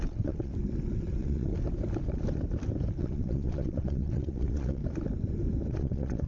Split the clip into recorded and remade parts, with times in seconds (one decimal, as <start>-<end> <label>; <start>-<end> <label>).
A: 0.0-0.5 remade; 0.5-1.1 recorded; 1.1-1.5 remade; 1.5-3.0 recorded; 3.0-4.8 remade; 4.8-5.7 recorded; 5.7-6.3 remade